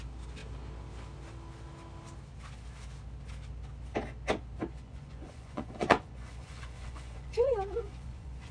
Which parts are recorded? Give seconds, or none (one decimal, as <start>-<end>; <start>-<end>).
0.0-4.7